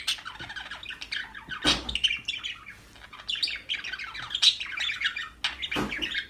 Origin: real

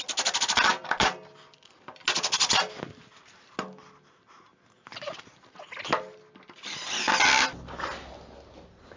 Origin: real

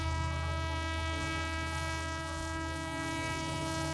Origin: fake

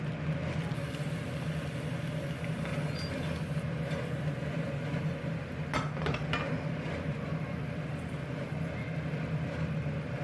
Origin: real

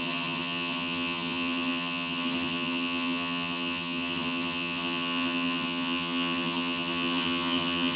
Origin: fake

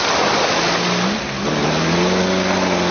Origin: real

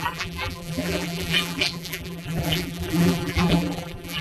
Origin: fake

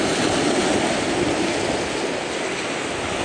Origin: real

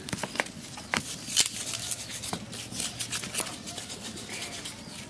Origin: real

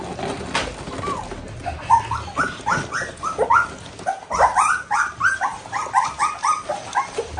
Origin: real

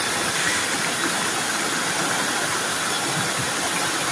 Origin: real